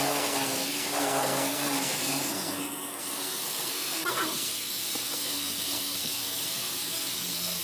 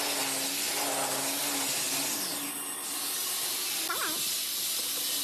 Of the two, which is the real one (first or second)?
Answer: second